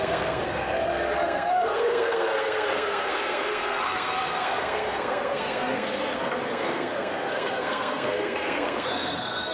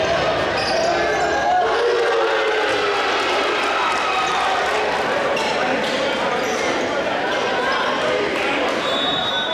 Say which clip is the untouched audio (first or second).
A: second